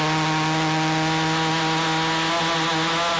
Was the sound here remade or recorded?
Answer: recorded